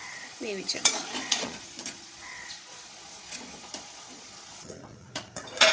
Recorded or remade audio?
remade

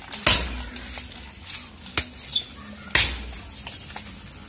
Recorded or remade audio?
recorded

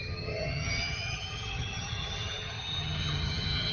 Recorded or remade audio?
remade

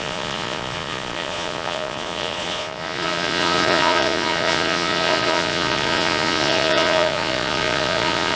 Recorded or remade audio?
remade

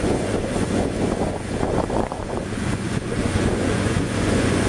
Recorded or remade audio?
remade